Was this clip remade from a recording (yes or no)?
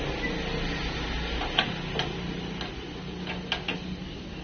no